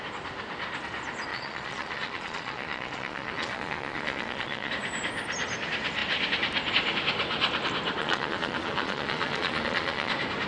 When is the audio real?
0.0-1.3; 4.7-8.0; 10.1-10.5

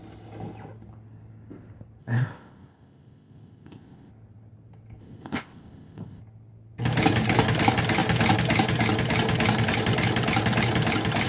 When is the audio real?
0.0-2.0; 4.1-5.0; 6.2-11.3

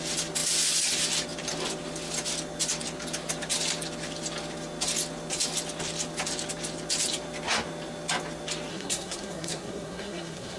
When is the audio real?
0.0-8.7

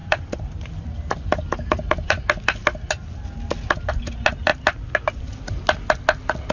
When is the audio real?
0.0-6.5

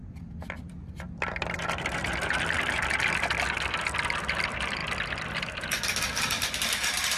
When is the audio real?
0.0-7.2

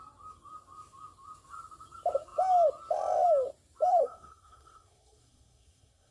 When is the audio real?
0.0-3.9